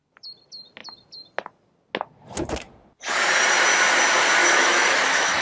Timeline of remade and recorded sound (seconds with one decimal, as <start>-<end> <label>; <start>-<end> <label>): 0.0-4.4 recorded; 4.4-5.4 remade